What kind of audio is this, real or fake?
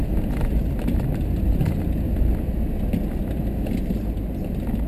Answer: real